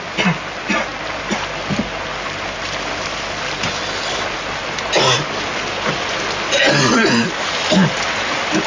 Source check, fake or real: real